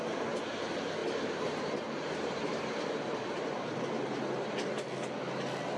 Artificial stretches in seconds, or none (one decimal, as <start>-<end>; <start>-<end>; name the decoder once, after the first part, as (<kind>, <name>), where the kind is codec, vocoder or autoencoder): 1.0-4.5 (vocoder, BigVGAN v2)